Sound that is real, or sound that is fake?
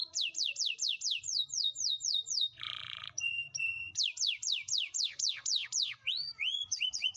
fake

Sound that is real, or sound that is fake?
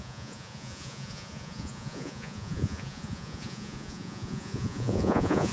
fake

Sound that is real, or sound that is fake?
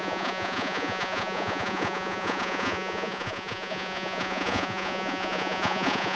fake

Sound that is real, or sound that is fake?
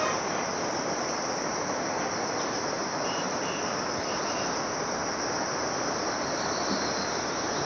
real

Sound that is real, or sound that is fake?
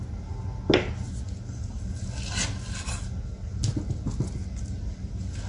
real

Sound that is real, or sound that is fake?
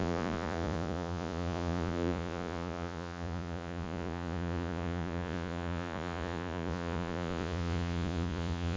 fake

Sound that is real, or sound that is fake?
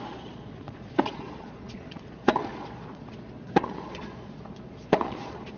fake